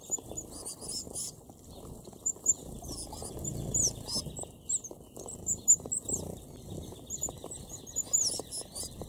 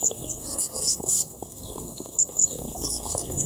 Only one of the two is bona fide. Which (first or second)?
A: first